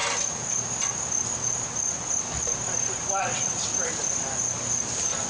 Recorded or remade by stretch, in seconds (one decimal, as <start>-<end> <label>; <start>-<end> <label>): 0.0-3.2 recorded; 3.2-3.7 remade; 3.7-5.3 recorded